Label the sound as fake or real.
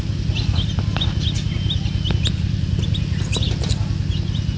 real